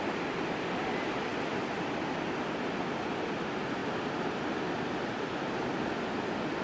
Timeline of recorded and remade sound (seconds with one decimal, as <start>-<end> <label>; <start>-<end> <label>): 0.0-6.6 recorded